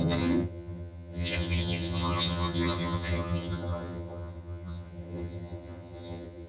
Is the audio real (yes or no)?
no